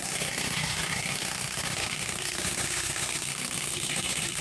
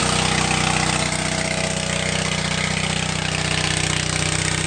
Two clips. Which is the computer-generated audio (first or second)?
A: first